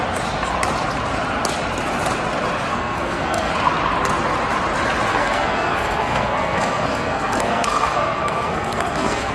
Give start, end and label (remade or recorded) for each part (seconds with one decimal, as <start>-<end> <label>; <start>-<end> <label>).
0.0-2.7 recorded; 2.7-3.5 remade; 3.5-5.1 recorded; 5.1-9.3 remade

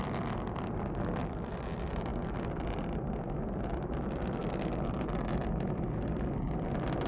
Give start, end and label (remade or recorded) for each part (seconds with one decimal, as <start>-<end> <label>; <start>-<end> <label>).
0.0-7.1 recorded

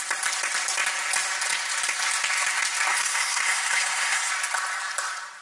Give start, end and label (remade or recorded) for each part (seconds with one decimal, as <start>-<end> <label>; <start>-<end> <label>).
0.0-2.9 recorded; 2.9-4.3 remade; 4.3-5.4 recorded

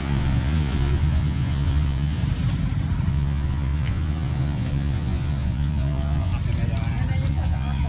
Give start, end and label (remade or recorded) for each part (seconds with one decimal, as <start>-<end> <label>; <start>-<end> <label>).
0.0-2.2 remade; 2.2-3.1 recorded; 3.1-6.3 remade; 6.3-7.3 recorded; 7.3-7.9 remade

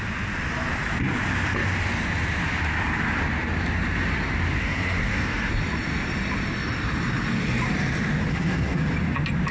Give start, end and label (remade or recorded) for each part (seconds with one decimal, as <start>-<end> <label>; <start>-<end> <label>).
0.0-4.6 recorded; 4.6-5.5 remade; 5.5-8.3 recorded; 8.3-8.8 remade; 8.8-9.5 recorded

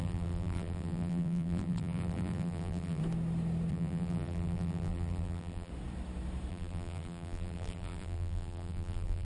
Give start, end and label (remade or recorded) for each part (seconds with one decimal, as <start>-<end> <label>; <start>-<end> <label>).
0.0-3.0 remade; 3.0-3.7 recorded; 3.7-5.7 remade; 5.7-6.5 recorded; 6.5-9.2 remade

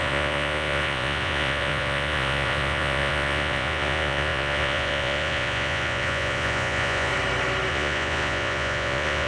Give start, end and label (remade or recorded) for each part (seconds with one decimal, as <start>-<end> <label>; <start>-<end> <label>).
0.0-7.1 remade; 7.1-7.7 recorded; 7.7-9.3 remade

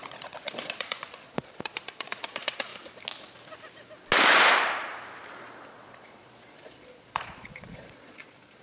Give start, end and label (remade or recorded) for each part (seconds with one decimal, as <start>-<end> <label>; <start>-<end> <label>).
0.0-2.7 remade; 2.7-5.7 recorded; 5.7-8.6 remade